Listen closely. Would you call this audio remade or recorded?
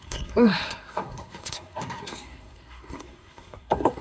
remade